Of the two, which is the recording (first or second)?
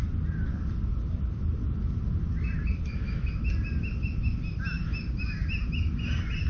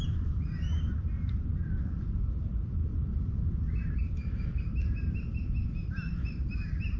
first